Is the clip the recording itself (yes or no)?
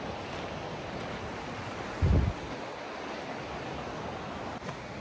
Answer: yes